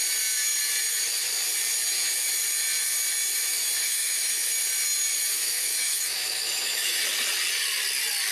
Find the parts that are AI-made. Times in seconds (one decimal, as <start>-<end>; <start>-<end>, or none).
3.8-4.5; 5.3-7.0